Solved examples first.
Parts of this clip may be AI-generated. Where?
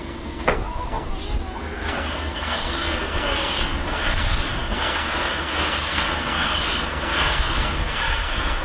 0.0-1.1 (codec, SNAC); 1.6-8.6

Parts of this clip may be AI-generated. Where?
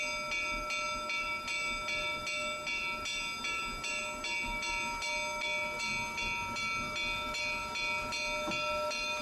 none